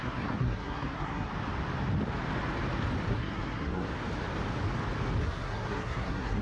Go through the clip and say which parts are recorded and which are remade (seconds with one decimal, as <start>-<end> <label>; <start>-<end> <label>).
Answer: 0.0-1.3 remade; 1.3-3.1 recorded; 3.1-3.9 remade; 3.9-5.2 recorded; 5.2-6.4 remade